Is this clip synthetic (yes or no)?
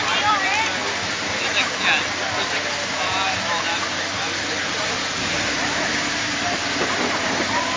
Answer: no